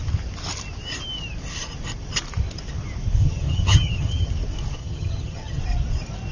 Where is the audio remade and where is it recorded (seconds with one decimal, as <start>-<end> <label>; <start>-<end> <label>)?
0.0-3.2 recorded; 3.2-4.3 remade; 4.3-4.8 recorded; 4.8-5.6 remade; 5.6-6.3 recorded